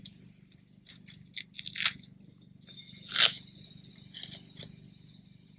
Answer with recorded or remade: recorded